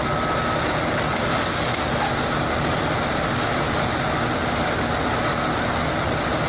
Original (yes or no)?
yes